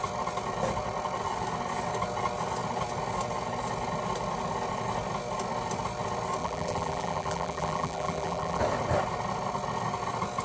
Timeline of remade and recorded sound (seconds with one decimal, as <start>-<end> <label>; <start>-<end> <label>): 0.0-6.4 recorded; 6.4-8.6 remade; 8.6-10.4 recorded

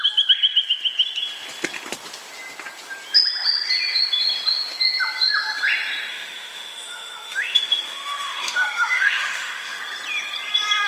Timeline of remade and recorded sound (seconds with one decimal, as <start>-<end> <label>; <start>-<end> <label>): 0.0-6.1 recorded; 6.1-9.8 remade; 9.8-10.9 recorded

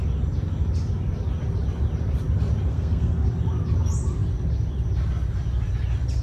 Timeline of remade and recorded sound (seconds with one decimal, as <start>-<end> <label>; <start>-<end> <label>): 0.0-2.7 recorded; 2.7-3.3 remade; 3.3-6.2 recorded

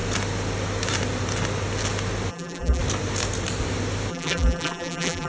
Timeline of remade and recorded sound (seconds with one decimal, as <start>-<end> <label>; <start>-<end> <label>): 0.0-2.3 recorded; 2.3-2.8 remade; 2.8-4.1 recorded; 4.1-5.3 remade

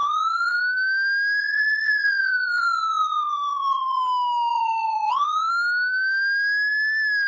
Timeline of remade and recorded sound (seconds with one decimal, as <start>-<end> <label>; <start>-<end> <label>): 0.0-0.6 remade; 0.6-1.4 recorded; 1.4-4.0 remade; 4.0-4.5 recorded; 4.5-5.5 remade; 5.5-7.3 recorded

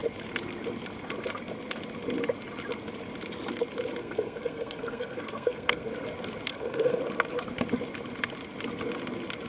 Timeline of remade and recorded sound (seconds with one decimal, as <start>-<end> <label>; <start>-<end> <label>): 0.0-4.0 recorded; 4.0-5.9 remade; 5.9-6.5 recorded; 6.5-7.0 remade; 7.0-9.5 recorded